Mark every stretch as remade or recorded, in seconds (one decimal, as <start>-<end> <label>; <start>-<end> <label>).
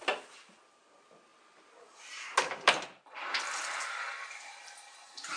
0.0-5.4 recorded